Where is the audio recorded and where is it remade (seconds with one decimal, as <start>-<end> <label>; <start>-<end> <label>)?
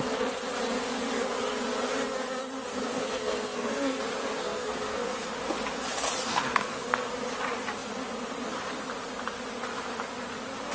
0.0-2.7 recorded; 2.7-4.0 remade; 4.0-4.4 recorded; 4.4-5.3 remade; 5.3-6.3 recorded; 6.3-7.1 remade; 7.1-10.7 recorded